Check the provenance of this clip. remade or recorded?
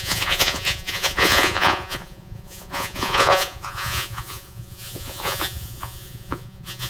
remade